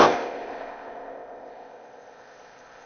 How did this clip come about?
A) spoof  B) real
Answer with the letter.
A